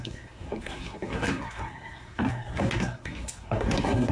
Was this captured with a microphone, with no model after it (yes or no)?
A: no